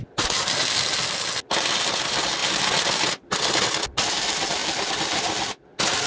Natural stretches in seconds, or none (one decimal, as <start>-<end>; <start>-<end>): 0.0-6.1